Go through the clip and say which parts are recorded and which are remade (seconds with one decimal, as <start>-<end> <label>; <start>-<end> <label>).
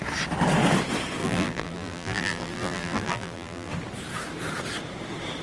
0.0-1.2 recorded; 1.2-3.7 remade; 3.7-5.4 recorded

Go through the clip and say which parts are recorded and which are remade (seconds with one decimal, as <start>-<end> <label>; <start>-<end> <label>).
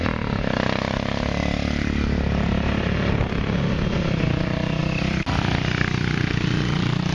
0.0-1.6 recorded; 1.6-3.3 remade; 3.3-4.8 recorded; 4.8-5.4 remade; 5.4-7.1 recorded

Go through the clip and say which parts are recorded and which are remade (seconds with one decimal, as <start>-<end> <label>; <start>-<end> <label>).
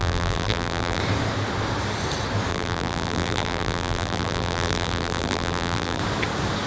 0.0-1.0 remade; 1.0-2.5 recorded; 2.5-6.0 remade; 6.0-6.7 recorded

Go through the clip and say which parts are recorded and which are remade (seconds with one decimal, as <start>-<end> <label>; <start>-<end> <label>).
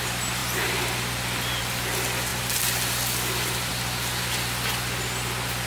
0.0-5.7 recorded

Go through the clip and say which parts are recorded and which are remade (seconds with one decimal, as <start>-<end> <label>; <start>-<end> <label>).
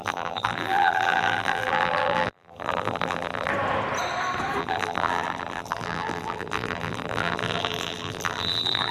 0.0-3.5 remade; 3.5-4.6 recorded; 4.6-8.9 remade